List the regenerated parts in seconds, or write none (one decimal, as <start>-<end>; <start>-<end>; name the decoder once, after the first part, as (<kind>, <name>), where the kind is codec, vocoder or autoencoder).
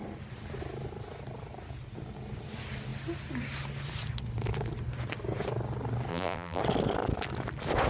6.1-6.6 (vocoder, BigVGAN v2)